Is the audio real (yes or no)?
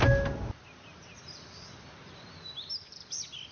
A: yes